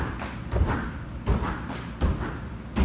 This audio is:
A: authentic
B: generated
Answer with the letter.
A